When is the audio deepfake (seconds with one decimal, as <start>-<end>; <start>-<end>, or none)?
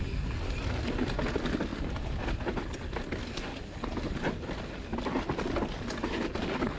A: none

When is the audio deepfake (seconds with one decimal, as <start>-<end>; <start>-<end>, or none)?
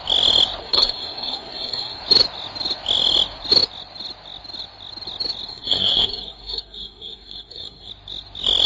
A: 0.6-2.0; 5.5-7.9